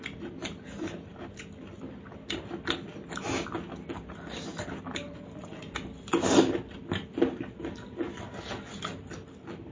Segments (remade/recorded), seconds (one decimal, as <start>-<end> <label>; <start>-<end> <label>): 0.0-9.7 recorded